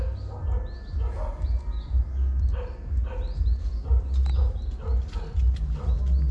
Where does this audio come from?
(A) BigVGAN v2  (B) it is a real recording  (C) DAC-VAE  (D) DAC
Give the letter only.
B